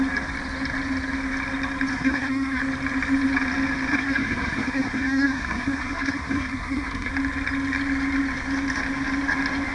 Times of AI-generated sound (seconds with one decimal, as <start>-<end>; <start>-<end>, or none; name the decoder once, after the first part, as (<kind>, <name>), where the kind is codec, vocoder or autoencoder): 1.9-2.6 (codec, SNAC); 3.9-7.1